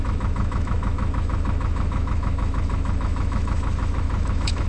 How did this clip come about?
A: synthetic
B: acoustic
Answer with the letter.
A